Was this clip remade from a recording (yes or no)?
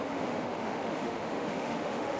yes